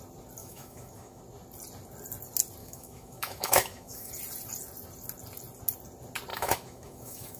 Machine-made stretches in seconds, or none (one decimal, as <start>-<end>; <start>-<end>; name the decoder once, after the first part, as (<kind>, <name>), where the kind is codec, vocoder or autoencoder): 0.4-1.2 (autoencoder, DAC-VAE); 2.6-4.1; 6.3-7.4